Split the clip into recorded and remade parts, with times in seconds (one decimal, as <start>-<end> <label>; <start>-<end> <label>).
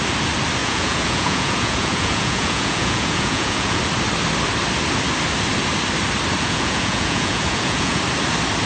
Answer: 0.0-0.6 recorded; 0.6-3.8 remade; 3.8-6.4 recorded; 6.4-8.0 remade; 8.0-8.7 recorded